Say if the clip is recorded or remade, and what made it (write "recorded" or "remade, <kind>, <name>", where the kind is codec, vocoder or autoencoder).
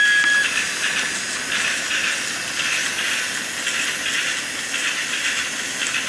recorded